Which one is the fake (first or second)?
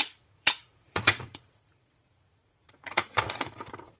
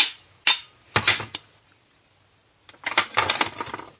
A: first